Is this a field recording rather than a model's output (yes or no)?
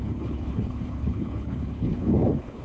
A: no